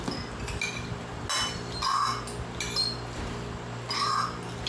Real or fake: real